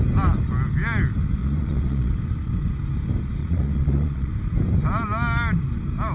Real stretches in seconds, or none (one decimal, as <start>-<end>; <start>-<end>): 0.0-1.4; 2.1-3.4; 4.3-6.1